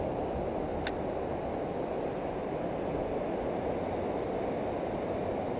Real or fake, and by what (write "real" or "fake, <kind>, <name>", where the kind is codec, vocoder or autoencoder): real